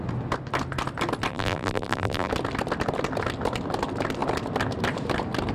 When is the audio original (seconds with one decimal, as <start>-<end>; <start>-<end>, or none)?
0.0-1.3; 2.3-5.5